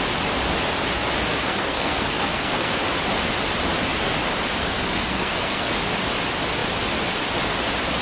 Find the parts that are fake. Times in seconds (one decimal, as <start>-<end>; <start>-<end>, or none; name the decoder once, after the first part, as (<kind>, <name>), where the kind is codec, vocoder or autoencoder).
1.3-2.8 (codec, SNAC); 4.6-5.7